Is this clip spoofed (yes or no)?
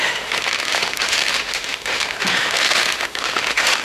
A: yes